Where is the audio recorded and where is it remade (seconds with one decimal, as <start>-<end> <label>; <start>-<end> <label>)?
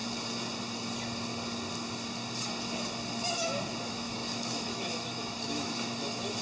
0.0-3.8 recorded; 3.8-6.4 remade